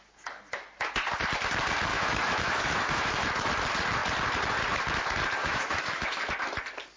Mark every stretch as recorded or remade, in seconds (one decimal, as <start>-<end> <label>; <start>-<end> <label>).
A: 0.0-1.9 recorded; 1.9-3.1 remade; 3.1-5.4 recorded; 5.4-6.3 remade; 6.3-7.0 recorded